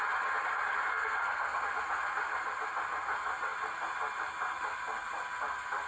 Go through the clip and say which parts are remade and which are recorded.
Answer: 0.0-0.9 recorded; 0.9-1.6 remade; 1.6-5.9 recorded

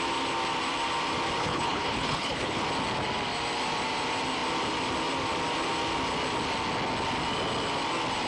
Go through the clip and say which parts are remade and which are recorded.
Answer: 0.0-1.4 recorded; 1.4-2.6 remade; 2.6-8.3 recorded

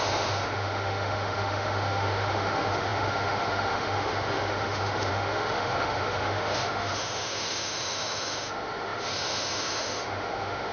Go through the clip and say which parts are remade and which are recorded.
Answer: 0.0-10.7 remade

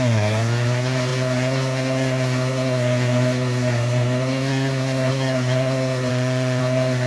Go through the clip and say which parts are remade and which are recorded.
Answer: 0.0-6.1 remade; 6.1-6.6 recorded; 6.6-7.1 remade

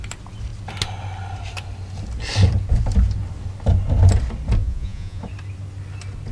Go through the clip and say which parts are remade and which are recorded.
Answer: 0.0-4.6 recorded; 4.6-5.2 remade; 5.2-6.3 recorded

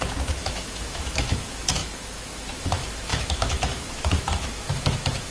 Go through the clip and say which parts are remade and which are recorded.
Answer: 0.0-5.3 remade

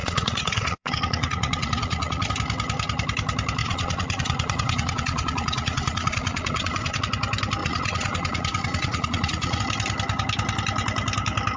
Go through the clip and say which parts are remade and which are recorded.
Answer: 0.0-2.3 remade; 2.3-3.6 recorded; 3.6-7.0 remade; 7.0-7.6 recorded; 7.6-9.6 remade; 9.6-11.6 recorded